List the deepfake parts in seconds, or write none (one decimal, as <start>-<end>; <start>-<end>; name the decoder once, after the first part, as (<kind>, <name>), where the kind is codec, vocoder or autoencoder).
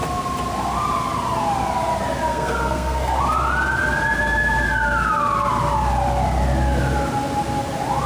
2.3-3.2 (codec, SNAC)